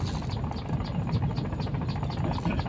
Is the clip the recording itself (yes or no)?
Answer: yes